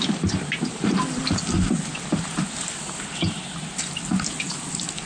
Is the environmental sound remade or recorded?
recorded